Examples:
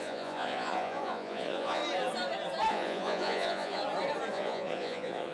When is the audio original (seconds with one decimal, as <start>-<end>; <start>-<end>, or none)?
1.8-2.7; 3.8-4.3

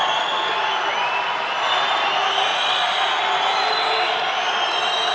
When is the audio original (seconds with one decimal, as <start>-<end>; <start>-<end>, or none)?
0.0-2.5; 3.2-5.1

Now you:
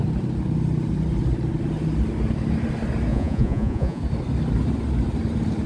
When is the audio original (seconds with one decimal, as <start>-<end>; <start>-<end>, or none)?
0.0-3.1; 4.0-5.7

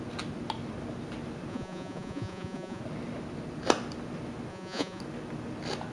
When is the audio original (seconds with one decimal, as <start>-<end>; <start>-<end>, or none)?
0.0-1.5; 2.8-4.5; 5.0-5.9

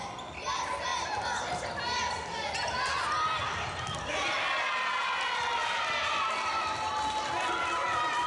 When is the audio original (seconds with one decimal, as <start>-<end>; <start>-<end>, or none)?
0.0-8.3